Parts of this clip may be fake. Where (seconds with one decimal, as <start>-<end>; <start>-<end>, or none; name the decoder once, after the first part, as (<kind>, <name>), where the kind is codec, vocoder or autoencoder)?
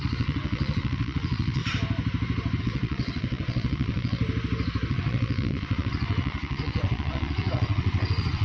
0.0-1.6 (vocoder, WaveNeXt); 2.6-4.2; 4.9-8.4